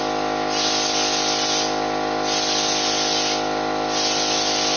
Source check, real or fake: real